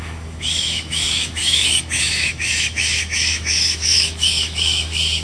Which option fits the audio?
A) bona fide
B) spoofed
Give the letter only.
B